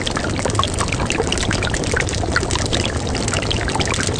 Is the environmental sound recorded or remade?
recorded